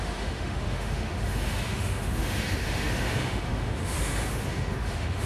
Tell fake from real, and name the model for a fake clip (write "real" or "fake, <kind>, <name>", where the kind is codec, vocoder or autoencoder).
fake, autoencoder, DAC-VAE